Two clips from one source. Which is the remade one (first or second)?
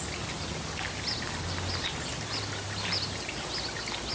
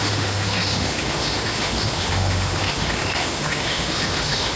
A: second